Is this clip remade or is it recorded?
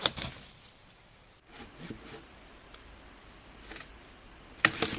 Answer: recorded